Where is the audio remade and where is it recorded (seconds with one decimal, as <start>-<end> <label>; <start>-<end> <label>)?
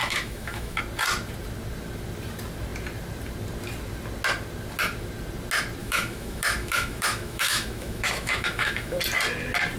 0.0-0.8 remade; 0.8-5.8 recorded; 5.8-9.0 remade; 9.0-9.8 recorded